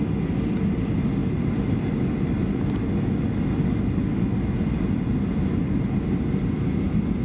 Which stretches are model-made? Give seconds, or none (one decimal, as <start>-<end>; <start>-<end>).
none